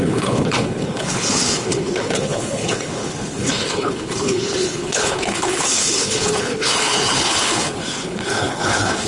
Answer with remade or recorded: remade